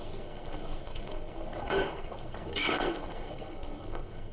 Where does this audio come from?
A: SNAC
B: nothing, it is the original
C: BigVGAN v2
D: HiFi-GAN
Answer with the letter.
A